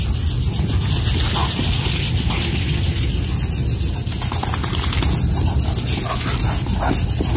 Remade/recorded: recorded